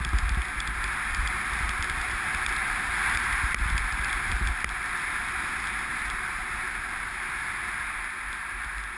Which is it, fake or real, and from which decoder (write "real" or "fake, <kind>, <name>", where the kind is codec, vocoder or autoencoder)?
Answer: real